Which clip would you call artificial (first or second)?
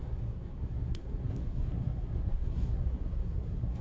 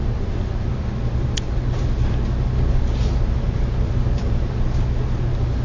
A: first